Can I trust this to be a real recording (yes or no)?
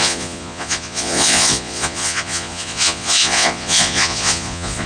no